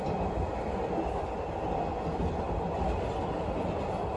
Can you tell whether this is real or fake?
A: real